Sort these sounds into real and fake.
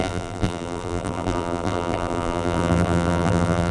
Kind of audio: fake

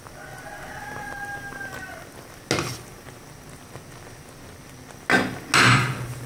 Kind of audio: real